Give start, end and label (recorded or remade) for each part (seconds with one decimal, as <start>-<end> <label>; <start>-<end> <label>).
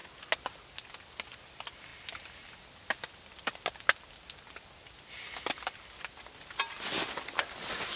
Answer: 0.0-8.0 recorded